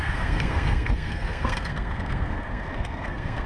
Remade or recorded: remade